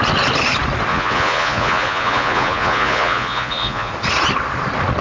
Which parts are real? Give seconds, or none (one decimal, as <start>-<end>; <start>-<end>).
0.0-0.9; 3.9-5.0